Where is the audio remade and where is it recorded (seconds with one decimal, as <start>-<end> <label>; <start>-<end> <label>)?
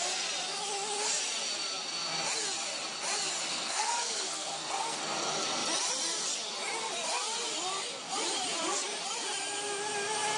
0.0-3.5 recorded; 3.5-5.0 remade; 5.0-10.4 recorded